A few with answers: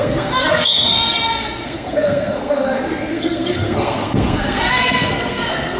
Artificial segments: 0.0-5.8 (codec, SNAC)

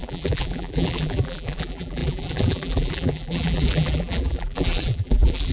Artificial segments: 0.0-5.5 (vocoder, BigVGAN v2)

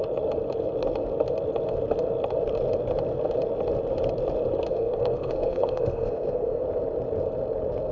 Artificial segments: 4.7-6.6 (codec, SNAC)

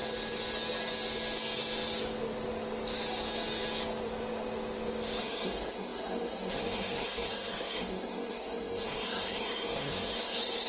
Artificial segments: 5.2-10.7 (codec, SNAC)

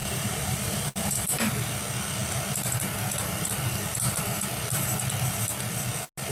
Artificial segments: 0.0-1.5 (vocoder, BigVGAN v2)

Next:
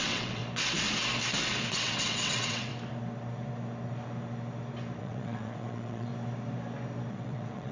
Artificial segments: 0.0-0.4 (vocoder, WaveNeXt); 1.7-2.7; 5.0-6.1; 7.1-7.7